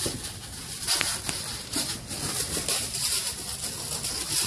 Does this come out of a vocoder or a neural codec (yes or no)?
no